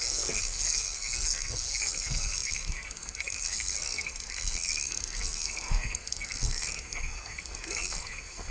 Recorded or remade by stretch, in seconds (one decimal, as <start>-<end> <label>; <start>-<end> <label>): 0.0-8.5 remade